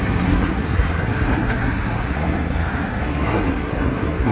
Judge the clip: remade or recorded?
remade